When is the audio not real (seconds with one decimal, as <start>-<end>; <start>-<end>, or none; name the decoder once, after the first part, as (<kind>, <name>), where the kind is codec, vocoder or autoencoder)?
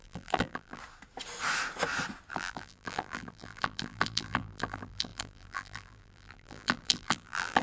0.0-0.8 (vocoder, BigVGAN v2); 2.3-7.6